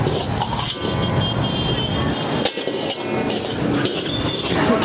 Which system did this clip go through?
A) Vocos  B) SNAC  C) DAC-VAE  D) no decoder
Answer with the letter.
D